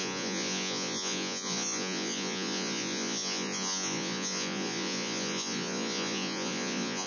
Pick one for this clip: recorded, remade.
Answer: remade